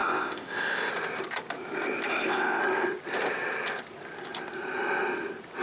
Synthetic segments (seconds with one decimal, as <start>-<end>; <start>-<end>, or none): 0.0-0.9; 2.1-2.6